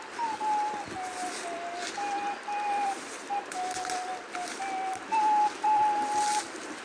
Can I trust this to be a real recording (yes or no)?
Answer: no